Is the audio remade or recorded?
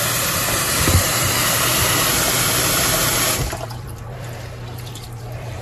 remade